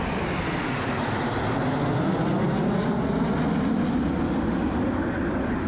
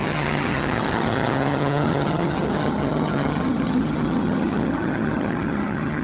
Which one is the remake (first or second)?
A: second